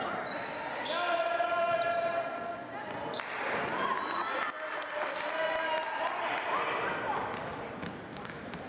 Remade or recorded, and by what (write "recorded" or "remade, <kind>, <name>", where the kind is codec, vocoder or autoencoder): recorded